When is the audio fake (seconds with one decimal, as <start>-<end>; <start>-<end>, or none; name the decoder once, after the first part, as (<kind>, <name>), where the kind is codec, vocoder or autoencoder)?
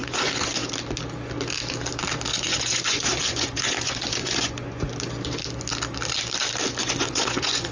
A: 0.0-0.7 (vocoder, Vocos); 2.3-4.9; 6.8-7.7